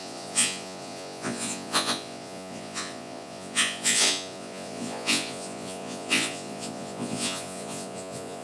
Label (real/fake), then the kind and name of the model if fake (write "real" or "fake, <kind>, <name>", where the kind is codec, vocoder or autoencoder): fake, vocoder, Vocos